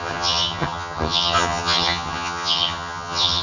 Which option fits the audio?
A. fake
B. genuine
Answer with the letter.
A